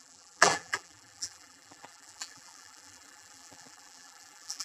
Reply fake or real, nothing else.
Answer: fake